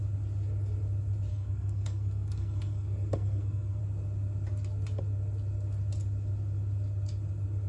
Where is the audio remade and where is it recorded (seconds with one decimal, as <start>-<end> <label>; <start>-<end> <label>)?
0.0-1.3 recorded; 1.3-3.8 remade; 3.8-7.7 recorded